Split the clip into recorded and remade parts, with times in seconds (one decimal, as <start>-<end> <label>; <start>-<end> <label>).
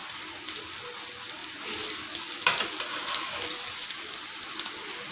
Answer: 0.0-5.1 recorded